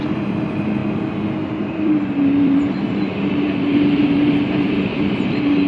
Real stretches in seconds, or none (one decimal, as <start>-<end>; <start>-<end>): 0.8-1.6